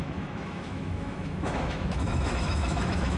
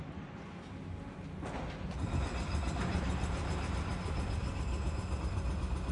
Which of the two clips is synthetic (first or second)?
first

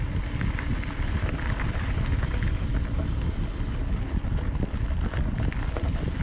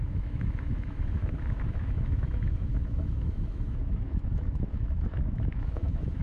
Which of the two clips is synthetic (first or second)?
second